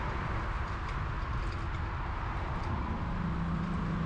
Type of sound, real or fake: real